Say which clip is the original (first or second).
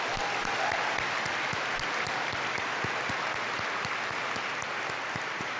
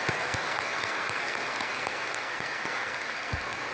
first